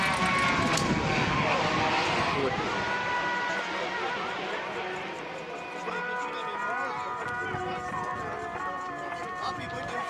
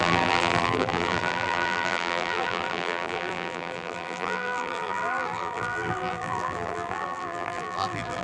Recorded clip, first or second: first